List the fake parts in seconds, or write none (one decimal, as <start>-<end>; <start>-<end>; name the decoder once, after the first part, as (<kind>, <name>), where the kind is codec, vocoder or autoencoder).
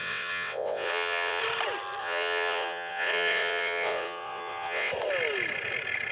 0.0-1.4 (vocoder, WaveNeXt); 2.0-4.9